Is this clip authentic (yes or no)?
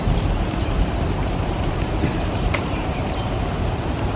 no